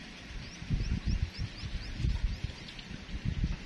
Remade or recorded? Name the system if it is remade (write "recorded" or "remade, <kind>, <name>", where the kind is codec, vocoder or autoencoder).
recorded